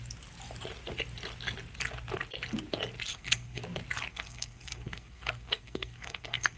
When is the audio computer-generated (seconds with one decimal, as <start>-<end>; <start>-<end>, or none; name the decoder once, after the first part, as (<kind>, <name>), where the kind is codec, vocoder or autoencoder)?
3.1-3.6 (codec, SNAC); 4.1-6.6